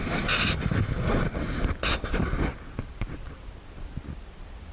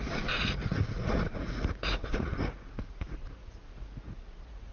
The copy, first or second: second